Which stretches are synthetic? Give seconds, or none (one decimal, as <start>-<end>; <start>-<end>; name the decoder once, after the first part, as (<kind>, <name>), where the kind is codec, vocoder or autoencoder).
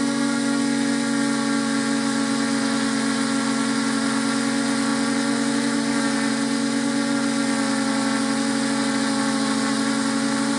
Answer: none